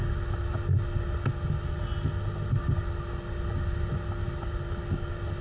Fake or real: real